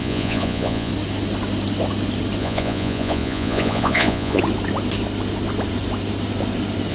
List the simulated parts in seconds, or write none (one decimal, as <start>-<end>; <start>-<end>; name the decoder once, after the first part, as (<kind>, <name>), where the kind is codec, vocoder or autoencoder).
0.0-0.9 (vocoder, Vocos); 2.4-4.4